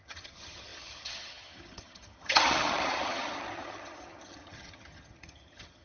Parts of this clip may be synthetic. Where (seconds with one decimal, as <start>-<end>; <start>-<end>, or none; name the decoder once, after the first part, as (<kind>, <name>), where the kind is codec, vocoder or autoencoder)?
0.0-5.8 (vocoder, HiFi-GAN)